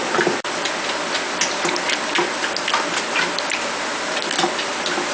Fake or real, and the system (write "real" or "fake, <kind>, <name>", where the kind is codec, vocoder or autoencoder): real